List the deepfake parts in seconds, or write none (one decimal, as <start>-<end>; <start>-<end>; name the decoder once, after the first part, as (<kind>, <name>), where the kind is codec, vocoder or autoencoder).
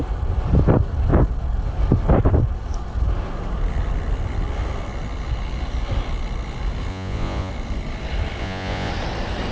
6.9-7.5 (vocoder, Vocos); 8.4-8.9